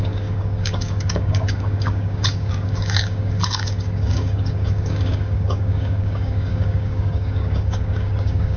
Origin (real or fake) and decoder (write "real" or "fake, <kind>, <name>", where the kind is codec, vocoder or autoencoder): fake, codec, DAC